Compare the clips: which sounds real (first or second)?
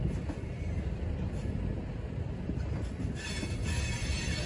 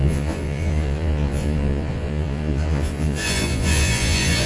first